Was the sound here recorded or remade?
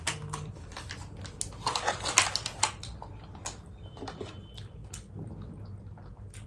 recorded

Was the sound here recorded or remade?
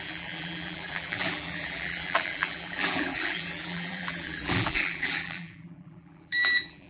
remade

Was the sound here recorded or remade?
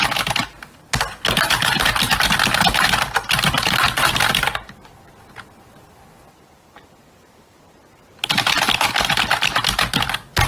recorded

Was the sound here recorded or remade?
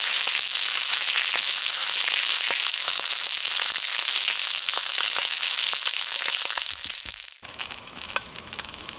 remade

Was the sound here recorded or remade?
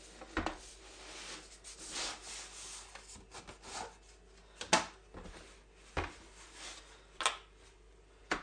recorded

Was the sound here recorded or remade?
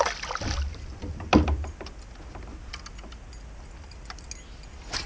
recorded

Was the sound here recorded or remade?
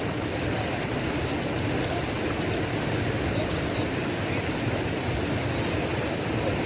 recorded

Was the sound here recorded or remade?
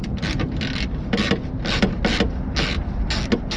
recorded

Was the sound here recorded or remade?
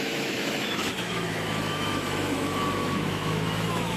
remade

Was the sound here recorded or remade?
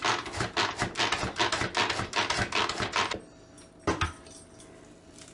recorded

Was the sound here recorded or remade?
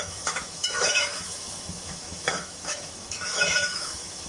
remade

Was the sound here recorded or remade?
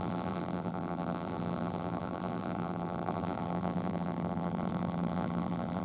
remade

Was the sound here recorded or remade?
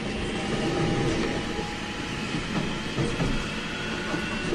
recorded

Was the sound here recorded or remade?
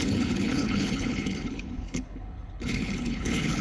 remade